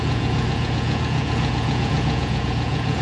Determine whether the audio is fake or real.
fake